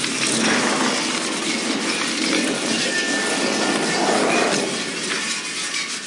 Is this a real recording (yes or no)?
yes